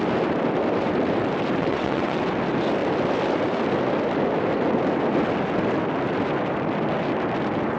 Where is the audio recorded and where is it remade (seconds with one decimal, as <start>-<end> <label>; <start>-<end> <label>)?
0.0-1.6 recorded; 1.6-2.2 remade; 2.2-7.8 recorded